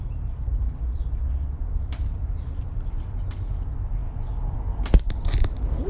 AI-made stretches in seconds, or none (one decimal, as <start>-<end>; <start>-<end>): none